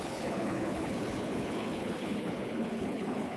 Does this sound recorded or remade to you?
remade